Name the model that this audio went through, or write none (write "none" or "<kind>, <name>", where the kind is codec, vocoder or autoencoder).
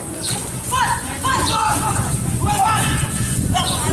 vocoder, Vocos